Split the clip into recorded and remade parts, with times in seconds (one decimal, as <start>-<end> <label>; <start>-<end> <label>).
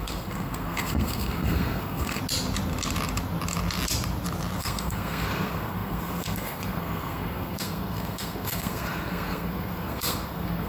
0.0-2.2 remade; 2.2-4.6 recorded; 4.6-10.7 remade